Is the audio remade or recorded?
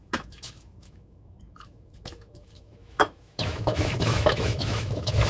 remade